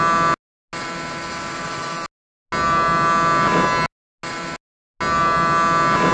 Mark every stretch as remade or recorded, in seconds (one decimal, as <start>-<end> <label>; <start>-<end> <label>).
0.0-6.1 recorded